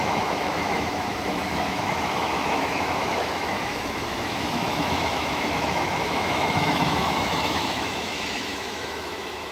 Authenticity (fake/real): fake